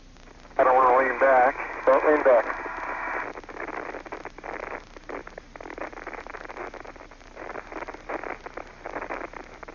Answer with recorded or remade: recorded